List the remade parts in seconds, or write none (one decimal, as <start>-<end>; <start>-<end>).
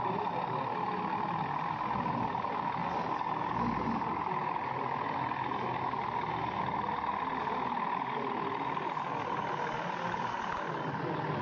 none